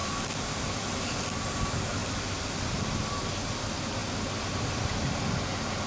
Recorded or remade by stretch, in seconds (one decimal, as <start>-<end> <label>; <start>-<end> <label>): 0.0-1.2 remade; 1.2-2.0 recorded; 2.0-3.3 remade; 3.3-5.9 recorded

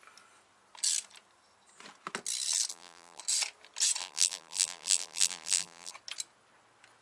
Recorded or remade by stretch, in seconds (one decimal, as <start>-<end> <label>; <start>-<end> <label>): 0.0-2.7 recorded; 2.7-3.2 remade; 3.2-4.0 recorded; 4.0-5.9 remade; 5.9-7.0 recorded

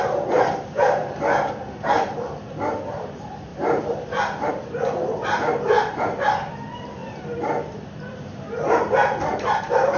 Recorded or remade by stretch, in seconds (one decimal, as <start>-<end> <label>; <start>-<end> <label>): 0.0-10.0 remade

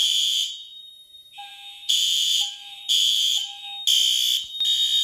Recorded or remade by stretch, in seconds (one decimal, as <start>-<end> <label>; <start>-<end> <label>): 0.0-3.4 remade; 3.4-5.0 recorded